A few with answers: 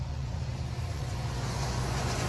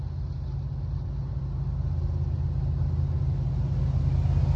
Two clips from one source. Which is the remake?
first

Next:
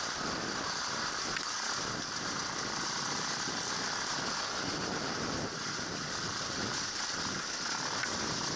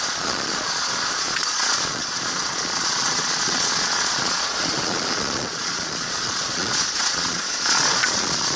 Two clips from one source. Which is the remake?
second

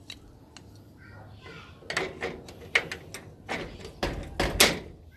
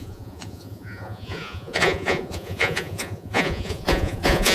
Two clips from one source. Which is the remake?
second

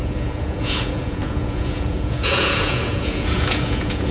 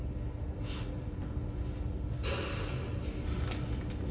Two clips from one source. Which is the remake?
first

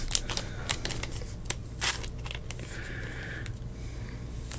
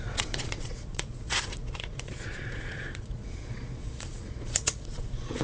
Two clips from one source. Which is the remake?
second